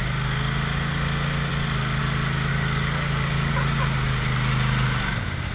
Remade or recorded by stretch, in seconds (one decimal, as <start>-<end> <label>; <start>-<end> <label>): 0.0-2.5 recorded; 2.5-3.5 remade; 3.5-5.5 recorded